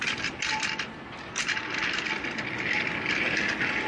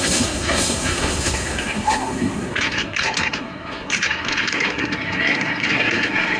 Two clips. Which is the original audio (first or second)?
first